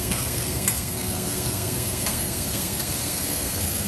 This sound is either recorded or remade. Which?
remade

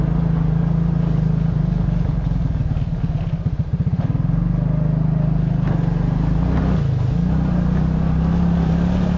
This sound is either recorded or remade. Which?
recorded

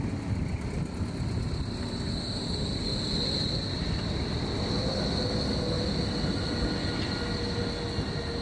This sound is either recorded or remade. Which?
recorded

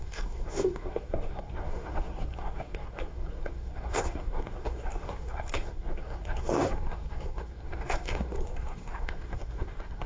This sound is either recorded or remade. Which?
remade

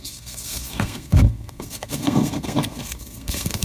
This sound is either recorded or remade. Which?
remade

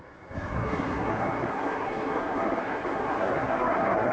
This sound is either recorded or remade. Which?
remade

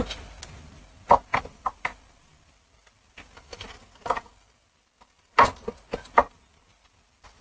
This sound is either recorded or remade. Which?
recorded